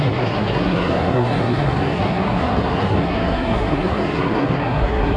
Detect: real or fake fake